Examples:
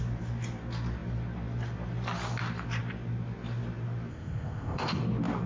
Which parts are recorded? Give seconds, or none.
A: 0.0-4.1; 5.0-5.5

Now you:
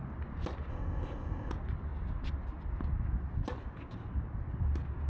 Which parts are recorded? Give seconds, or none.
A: 0.0-0.7; 1.5-5.1

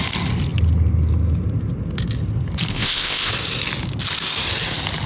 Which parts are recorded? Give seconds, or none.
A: 0.0-2.7; 3.3-5.1

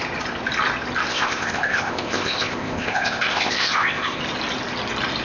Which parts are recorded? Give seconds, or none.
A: 0.0-1.1; 4.2-5.2